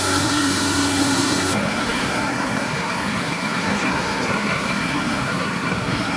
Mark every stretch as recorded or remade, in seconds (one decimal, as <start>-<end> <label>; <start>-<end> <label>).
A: 0.0-6.2 remade